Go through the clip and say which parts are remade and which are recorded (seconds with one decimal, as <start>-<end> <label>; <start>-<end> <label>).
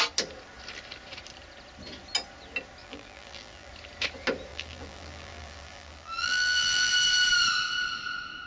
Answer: 0.0-2.8 recorded; 2.8-3.7 remade; 3.7-4.5 recorded; 4.5-6.9 remade; 6.9-8.5 recorded